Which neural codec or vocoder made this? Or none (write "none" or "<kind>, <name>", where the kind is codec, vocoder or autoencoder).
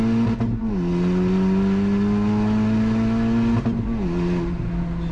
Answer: none